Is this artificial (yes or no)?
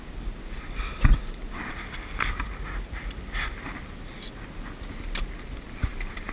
no